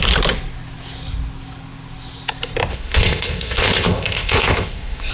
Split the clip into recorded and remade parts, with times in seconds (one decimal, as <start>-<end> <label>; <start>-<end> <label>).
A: 0.0-2.7 recorded; 2.7-5.1 remade